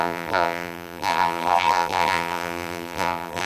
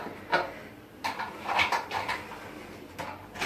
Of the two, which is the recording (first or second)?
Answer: second